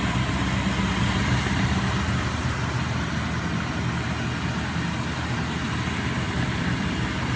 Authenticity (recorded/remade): recorded